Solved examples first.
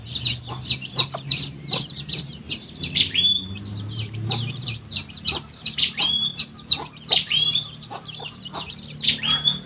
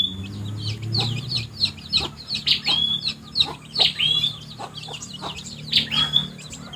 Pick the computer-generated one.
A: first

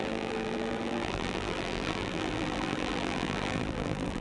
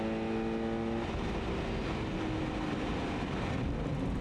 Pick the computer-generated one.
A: first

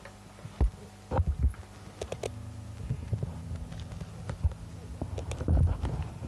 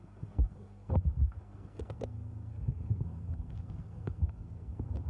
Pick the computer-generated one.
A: second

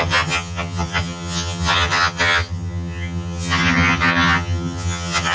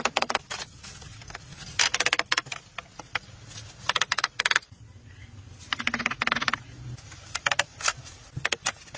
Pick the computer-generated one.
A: first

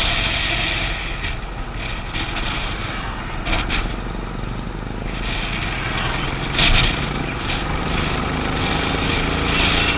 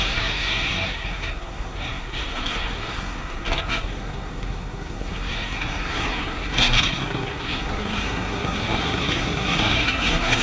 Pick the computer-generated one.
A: second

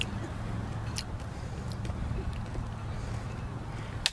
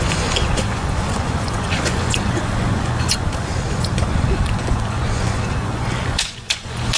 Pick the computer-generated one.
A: second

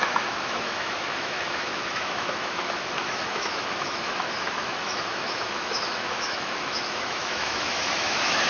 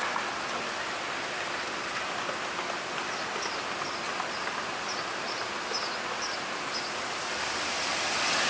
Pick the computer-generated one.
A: first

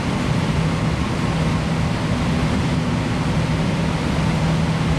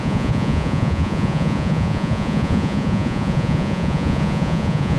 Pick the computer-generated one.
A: second